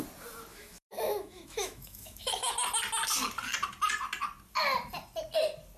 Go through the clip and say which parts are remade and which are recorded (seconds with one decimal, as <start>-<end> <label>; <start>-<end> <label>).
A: 0.0-0.5 recorded; 0.5-2.5 remade; 2.5-5.8 recorded